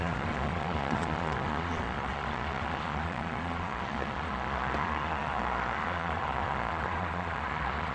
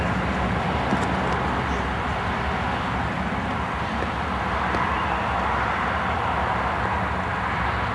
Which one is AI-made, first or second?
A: first